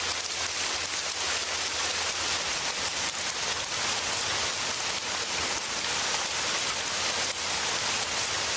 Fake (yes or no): no